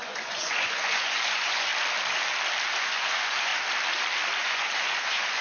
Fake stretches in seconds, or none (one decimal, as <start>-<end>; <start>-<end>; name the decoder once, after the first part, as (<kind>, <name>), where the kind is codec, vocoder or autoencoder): 0.0-1.7 (vocoder, Vocos); 2.8-3.5; 4.4-5.4